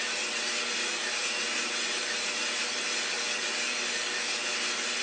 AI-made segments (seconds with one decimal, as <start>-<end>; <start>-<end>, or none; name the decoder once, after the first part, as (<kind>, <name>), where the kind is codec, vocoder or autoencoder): none